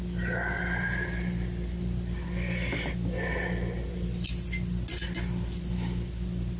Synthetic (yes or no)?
no